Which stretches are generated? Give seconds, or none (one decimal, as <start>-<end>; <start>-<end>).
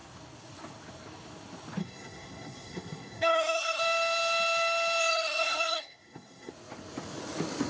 1.8-3.8; 5.0-6.5